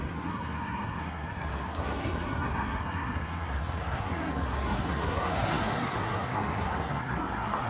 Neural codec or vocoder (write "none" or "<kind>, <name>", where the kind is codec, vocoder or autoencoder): codec, SNAC